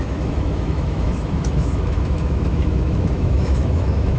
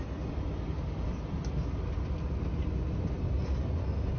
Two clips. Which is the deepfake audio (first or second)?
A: first